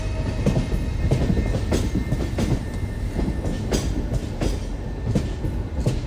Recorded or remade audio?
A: recorded